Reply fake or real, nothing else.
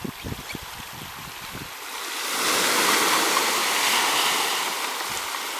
real